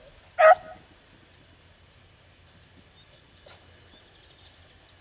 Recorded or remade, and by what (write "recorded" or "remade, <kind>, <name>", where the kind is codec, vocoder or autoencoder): recorded